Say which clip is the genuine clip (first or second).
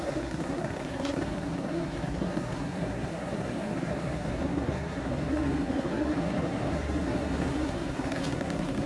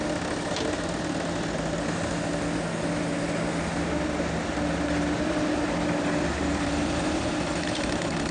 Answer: second